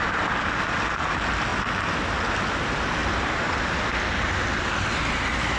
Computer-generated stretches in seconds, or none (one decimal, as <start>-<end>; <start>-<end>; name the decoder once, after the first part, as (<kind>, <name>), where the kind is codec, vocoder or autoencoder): none